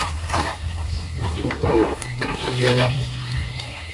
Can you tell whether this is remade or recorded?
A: remade